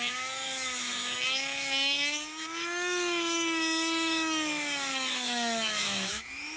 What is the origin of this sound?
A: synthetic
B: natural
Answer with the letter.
A